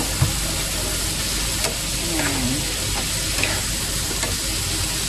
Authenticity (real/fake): real